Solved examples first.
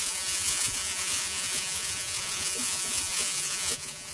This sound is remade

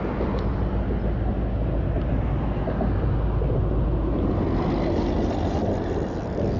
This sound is recorded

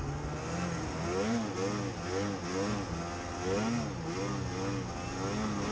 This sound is recorded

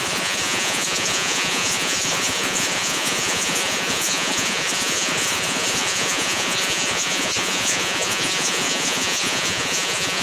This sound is remade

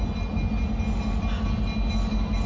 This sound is recorded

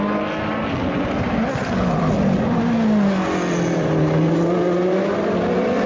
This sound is recorded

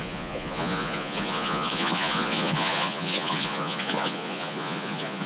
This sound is remade